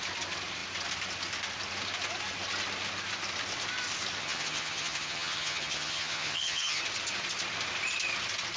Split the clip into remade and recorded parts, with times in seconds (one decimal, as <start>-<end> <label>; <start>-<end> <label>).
0.0-4.2 recorded; 4.2-6.8 remade; 6.8-8.6 recorded